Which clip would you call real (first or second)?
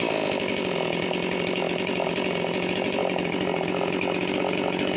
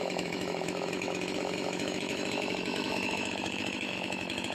first